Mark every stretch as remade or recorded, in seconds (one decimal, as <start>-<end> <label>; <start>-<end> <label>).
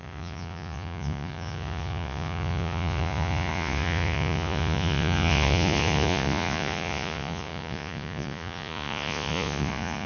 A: 0.0-10.1 remade